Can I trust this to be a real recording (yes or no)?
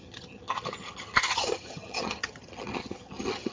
no